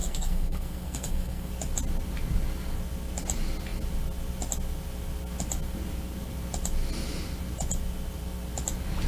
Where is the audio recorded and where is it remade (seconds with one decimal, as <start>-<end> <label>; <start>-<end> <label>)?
0.0-1.5 remade; 1.5-9.1 recorded